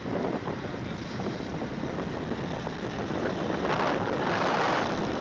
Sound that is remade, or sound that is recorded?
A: remade